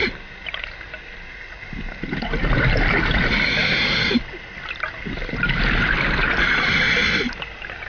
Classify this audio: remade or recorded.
recorded